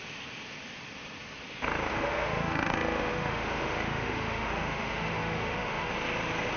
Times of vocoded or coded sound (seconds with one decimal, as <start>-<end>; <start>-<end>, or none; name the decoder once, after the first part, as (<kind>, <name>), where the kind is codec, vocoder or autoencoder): 1.9-5.9 (autoencoder, DAC-VAE)